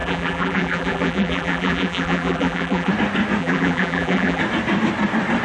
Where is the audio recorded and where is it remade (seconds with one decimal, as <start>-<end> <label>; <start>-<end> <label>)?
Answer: 0.0-2.9 remade; 2.9-3.4 recorded; 3.4-4.4 remade; 4.4-5.4 recorded